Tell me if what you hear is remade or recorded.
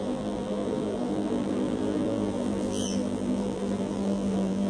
remade